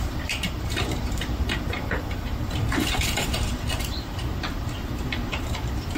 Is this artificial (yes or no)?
yes